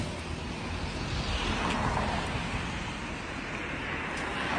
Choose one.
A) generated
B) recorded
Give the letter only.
B